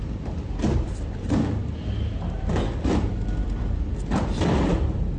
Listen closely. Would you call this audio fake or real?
fake